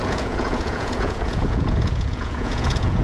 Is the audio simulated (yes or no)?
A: yes